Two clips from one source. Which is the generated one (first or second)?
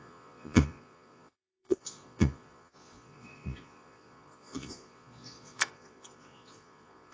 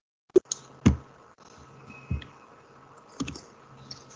first